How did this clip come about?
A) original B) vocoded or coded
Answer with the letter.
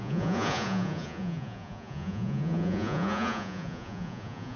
B